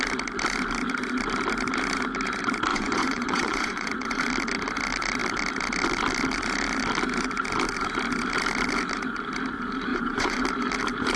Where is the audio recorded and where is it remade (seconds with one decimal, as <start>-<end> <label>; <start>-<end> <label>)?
0.0-2.7 recorded; 2.7-4.2 remade; 4.2-9.9 recorded; 9.9-10.4 remade; 10.4-11.2 recorded